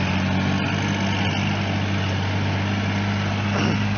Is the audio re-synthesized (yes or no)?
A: no